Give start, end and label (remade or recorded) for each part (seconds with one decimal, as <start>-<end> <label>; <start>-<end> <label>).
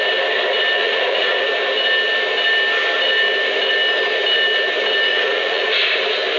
0.0-0.8 recorded; 0.8-1.4 remade; 1.4-5.1 recorded; 5.1-5.7 remade; 5.7-6.4 recorded